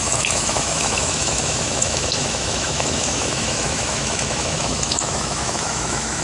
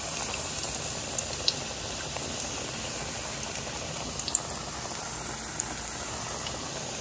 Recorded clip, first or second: second